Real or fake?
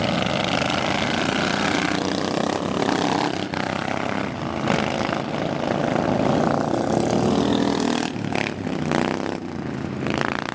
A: real